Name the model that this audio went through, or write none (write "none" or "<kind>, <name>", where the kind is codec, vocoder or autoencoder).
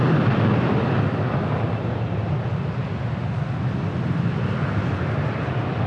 none